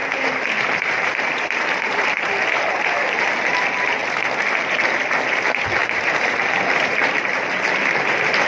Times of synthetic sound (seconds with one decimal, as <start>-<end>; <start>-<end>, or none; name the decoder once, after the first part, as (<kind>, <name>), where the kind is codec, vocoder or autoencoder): 0.0-4.0 (vocoder, BigVGAN v2); 4.7-8.5